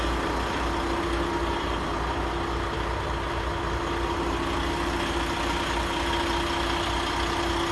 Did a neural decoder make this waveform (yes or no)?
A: no